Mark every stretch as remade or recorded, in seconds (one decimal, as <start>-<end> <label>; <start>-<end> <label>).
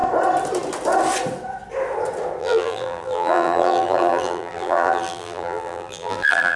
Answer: 0.0-2.4 recorded; 2.4-6.6 remade